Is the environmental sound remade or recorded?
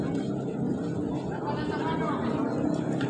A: recorded